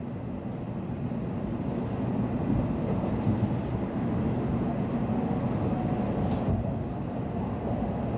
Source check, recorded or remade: recorded